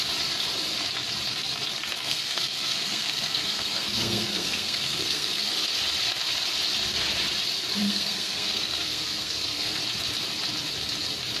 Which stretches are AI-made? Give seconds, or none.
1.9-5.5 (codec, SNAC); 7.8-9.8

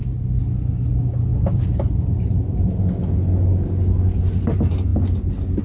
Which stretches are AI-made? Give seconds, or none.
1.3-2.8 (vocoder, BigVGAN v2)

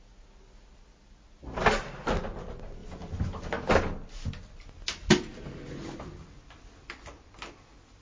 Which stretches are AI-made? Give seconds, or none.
none

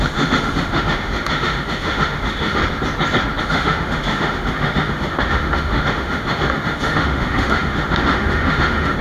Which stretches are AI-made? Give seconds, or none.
0.0-2.6 (autoencoder, DAC-VAE); 3.4-9.0

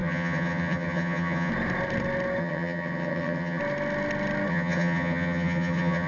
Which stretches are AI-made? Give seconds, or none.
0.0-1.5 (vocoder, HiFi-GAN); 2.4-3.6; 4.5-6.1